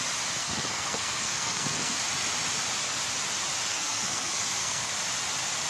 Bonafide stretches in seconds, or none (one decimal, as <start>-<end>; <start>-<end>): 0.0-0.4; 2.0-3.7; 4.9-5.7